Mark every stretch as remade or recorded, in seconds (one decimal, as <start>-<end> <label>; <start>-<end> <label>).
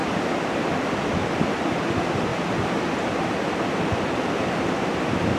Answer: 0.0-5.4 recorded